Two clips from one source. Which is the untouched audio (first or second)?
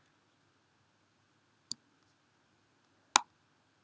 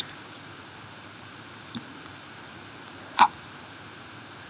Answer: first